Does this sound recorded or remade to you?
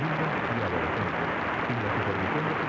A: recorded